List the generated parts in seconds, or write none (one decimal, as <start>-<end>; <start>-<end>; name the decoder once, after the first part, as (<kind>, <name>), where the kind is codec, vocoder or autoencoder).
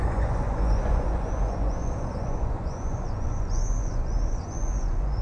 0.0-5.2 (vocoder, Vocos)